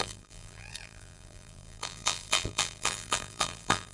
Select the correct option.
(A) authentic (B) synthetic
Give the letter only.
B